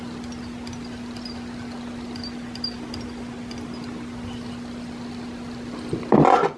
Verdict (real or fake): real